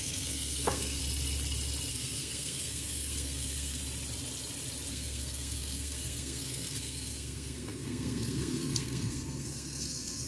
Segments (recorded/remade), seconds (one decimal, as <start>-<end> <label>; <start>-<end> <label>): 0.0-1.0 remade; 1.0-1.9 recorded; 1.9-3.8 remade; 3.8-4.9 recorded; 4.9-10.3 remade